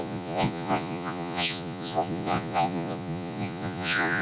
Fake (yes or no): yes